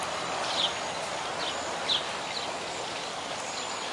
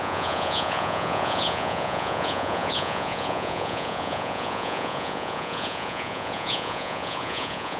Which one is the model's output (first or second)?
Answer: second